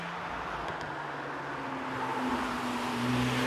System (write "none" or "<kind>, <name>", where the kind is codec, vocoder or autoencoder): none